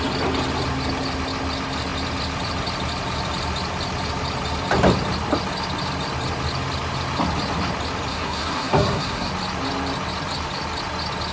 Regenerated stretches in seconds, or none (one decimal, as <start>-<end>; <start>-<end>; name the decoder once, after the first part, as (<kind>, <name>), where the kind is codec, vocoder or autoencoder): 8.1-9.3 (codec, SNAC)